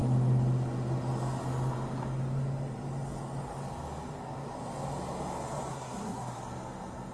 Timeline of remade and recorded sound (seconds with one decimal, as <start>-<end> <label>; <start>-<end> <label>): 0.0-5.7 recorded; 5.7-6.4 remade; 6.4-7.1 recorded